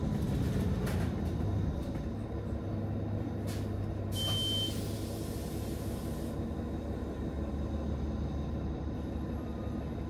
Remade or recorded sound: recorded